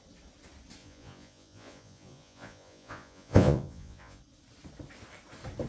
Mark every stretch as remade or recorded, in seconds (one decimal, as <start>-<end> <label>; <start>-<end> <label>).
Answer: 0.0-0.8 recorded; 0.8-4.2 remade; 4.2-5.7 recorded